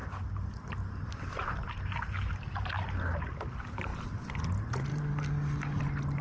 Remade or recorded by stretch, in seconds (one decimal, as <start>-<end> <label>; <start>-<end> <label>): 0.0-4.9 recorded; 4.9-5.8 remade; 5.8-6.2 recorded